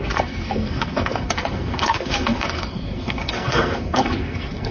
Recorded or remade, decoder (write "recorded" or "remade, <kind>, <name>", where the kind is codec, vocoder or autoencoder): remade, codec, SNAC